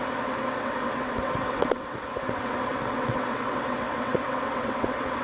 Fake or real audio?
fake